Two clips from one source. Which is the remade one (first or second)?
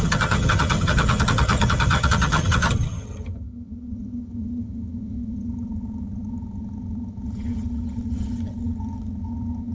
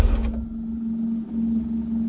first